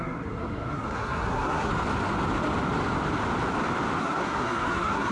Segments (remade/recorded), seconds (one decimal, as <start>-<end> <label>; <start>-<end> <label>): 0.0-1.7 remade; 1.7-4.0 recorded; 4.0-5.1 remade